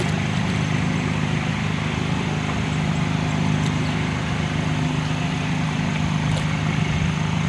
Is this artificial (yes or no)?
no